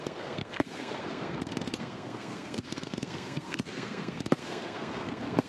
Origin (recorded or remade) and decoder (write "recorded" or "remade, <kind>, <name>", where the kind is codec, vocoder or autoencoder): remade, codec, SNAC